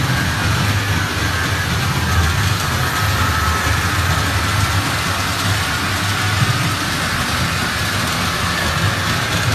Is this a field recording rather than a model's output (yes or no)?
yes